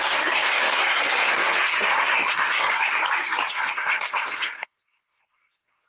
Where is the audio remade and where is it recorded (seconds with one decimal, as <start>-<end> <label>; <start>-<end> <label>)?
0.0-3.0 remade; 3.0-3.5 recorded; 3.5-5.9 remade